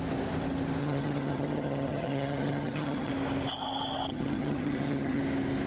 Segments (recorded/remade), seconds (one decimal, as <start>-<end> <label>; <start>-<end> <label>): 0.0-0.8 recorded; 0.8-3.1 remade; 3.1-4.1 recorded; 4.1-5.2 remade; 5.2-5.7 recorded